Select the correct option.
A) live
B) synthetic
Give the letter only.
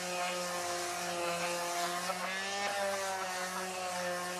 A